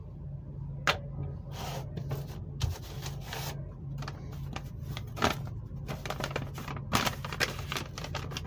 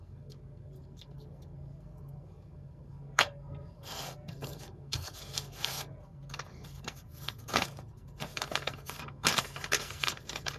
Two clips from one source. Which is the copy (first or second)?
second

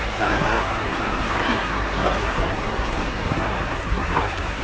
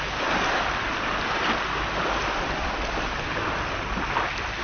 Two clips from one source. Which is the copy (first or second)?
first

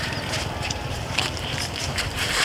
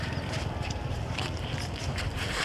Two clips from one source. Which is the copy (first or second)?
first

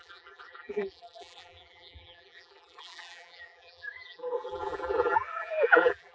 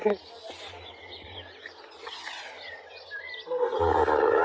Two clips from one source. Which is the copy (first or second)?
first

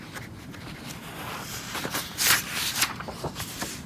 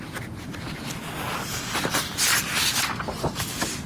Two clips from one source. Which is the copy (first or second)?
first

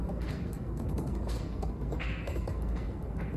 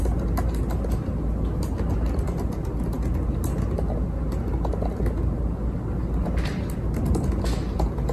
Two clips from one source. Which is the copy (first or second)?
first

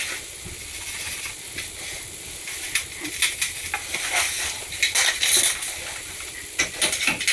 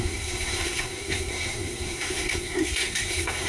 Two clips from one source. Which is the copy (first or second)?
second